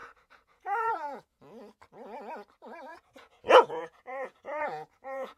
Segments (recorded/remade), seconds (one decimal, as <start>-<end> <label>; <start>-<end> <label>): 0.0-1.4 remade; 1.4-2.9 recorded; 2.9-5.4 remade